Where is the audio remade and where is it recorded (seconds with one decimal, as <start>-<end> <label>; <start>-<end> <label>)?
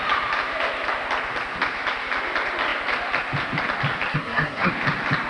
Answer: 0.0-4.1 recorded; 4.1-4.7 remade; 4.7-5.3 recorded